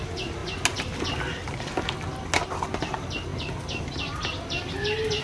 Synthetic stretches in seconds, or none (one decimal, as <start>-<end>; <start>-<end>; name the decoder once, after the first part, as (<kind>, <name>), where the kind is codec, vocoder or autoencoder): none